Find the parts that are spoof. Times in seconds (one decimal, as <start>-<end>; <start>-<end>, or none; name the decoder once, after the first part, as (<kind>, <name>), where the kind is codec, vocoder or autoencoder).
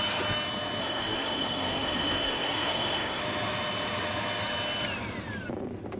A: 0.8-3.2 (codec, SNAC)